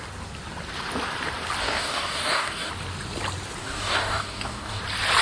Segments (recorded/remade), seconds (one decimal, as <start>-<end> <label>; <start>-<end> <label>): 0.0-1.6 recorded; 1.6-2.7 remade; 2.7-3.6 recorded; 3.6-4.8 remade; 4.8-5.2 recorded